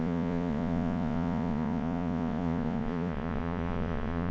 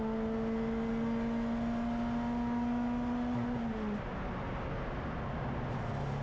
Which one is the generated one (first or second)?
first